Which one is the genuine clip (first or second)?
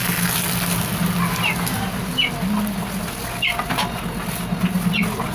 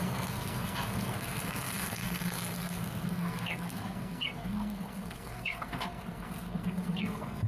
first